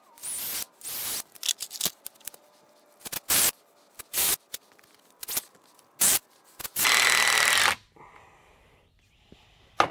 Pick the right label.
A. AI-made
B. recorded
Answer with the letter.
B